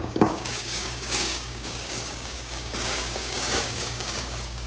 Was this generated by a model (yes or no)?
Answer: yes